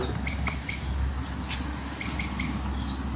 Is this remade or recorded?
recorded